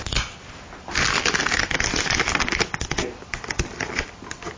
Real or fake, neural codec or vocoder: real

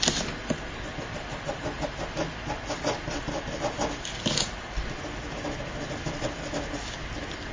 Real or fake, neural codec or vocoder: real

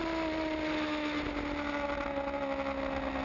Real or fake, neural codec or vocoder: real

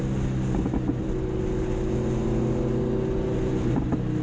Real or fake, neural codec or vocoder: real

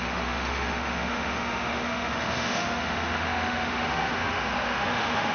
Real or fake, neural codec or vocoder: fake, autoencoder, DAC-VAE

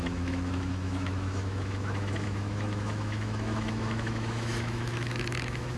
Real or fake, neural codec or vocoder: fake, autoencoder, DAC-VAE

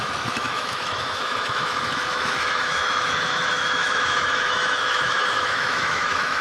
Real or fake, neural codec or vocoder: fake, autoencoder, DAC-VAE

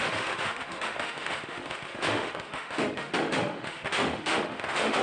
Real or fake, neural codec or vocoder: fake, autoencoder, DAC-VAE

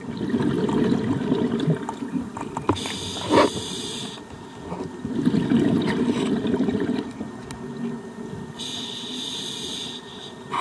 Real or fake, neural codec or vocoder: real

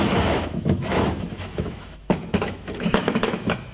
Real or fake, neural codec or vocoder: fake, autoencoder, DAC-VAE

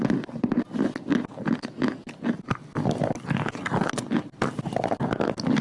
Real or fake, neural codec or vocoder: real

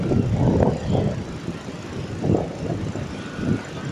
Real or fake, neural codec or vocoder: real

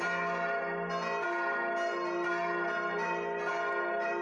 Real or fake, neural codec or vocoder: real